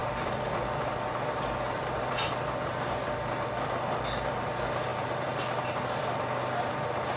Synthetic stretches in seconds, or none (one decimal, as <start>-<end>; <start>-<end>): 0.0-0.6; 1.1-2.4; 4.9-6.2

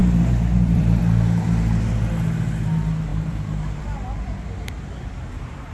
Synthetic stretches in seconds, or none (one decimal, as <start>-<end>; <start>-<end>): 0.0-1.0; 3.1-3.8

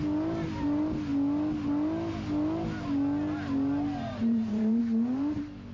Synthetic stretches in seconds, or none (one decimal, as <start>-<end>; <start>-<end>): 4.2-4.8

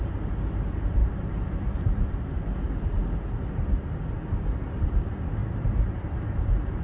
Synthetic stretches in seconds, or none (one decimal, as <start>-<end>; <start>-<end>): 1.0-2.4; 5.4-6.8